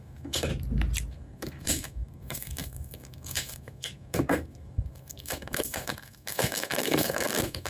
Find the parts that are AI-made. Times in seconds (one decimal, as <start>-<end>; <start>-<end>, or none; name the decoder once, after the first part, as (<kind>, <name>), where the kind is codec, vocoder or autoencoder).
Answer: 0.0-0.5 (codec, SNAC); 1.1-7.7